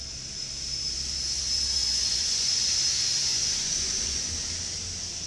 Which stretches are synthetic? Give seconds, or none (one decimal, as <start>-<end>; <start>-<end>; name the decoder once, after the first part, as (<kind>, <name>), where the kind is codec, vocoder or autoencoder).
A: 1.8-2.6 (vocoder, Vocos); 3.3-4.3